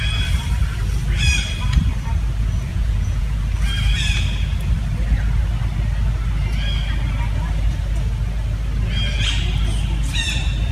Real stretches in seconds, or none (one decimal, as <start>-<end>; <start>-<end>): 0.0-2.7; 3.4-10.7